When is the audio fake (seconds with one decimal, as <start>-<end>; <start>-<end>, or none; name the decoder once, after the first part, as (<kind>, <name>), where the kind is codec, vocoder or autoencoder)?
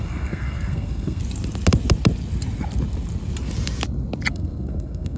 0.0-1.2 (codec, SNAC); 4.3-5.2